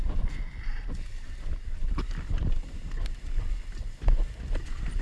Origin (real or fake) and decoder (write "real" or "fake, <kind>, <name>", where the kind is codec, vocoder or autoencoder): real